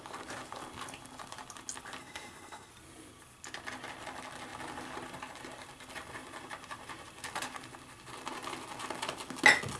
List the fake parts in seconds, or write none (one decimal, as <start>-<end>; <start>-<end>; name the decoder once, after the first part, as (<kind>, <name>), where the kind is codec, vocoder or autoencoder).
2.0-2.7 (codec, SNAC)